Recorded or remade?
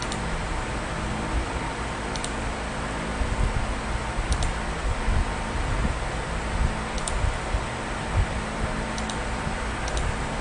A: recorded